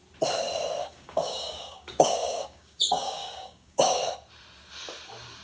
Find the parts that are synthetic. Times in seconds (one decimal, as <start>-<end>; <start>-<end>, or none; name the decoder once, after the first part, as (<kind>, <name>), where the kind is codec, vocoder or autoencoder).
0.8-4.0 (codec, DAC)